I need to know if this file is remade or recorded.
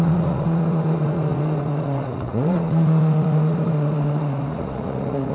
remade